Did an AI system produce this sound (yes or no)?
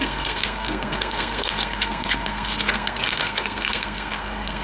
yes